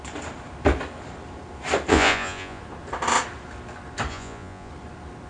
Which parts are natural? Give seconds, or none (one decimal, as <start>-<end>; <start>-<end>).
0.0-1.9; 2.6-4.1; 4.7-5.3